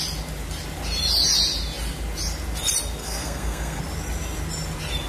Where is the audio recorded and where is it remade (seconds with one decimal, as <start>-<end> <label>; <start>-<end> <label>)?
0.0-3.0 recorded; 3.0-3.8 remade; 3.8-5.1 recorded